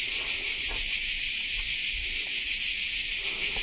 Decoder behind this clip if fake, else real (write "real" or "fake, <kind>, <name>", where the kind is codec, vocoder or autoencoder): real